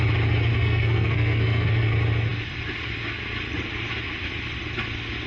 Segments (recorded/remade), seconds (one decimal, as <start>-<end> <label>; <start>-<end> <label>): 0.0-0.5 recorded; 0.5-1.9 remade; 1.9-5.3 recorded

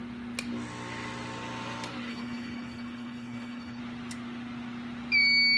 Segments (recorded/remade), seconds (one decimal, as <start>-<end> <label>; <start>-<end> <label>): 0.0-2.1 recorded; 2.1-3.8 remade; 3.8-5.6 recorded

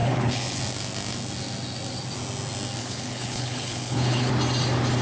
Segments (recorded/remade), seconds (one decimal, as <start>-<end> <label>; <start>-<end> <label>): 0.0-0.6 remade; 0.6-2.8 recorded; 2.8-4.3 remade; 4.3-5.0 recorded

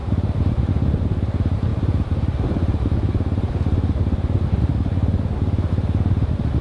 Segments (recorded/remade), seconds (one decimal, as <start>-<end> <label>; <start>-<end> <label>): 0.0-0.7 remade; 0.7-6.6 recorded

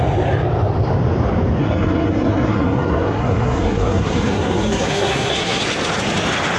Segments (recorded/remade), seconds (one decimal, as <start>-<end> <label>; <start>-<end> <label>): 0.0-1.6 recorded; 1.6-5.6 remade; 5.6-6.6 recorded